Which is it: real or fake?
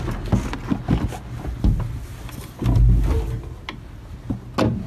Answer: real